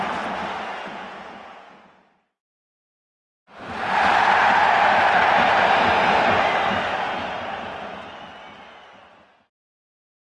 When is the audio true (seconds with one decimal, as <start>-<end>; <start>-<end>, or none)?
0.0-0.7; 1.8-10.4